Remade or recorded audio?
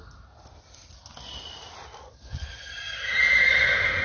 recorded